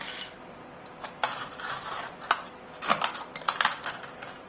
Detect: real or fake real